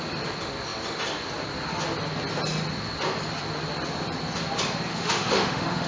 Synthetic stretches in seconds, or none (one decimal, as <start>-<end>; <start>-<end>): 4.9-5.9